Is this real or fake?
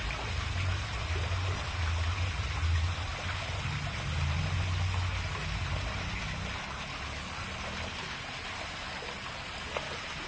real